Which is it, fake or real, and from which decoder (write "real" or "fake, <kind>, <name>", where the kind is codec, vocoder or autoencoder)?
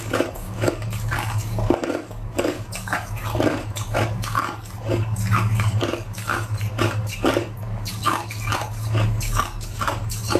fake, codec, DAC